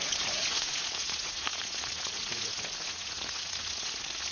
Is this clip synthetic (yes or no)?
yes